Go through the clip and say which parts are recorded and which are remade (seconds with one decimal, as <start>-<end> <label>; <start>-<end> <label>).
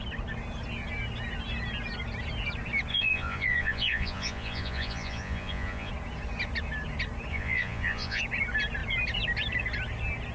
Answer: 0.0-2.9 recorded; 2.9-5.9 remade; 5.9-7.3 recorded; 7.3-8.2 remade; 8.2-10.3 recorded